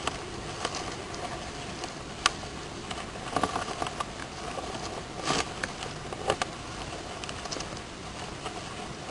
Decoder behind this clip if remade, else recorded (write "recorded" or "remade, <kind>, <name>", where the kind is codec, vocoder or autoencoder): recorded